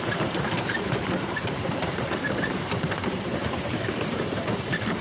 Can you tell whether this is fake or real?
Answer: fake